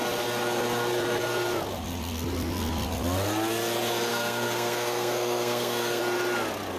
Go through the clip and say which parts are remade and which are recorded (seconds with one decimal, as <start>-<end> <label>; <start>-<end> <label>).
0.0-4.1 recorded; 4.1-6.0 remade; 6.0-6.8 recorded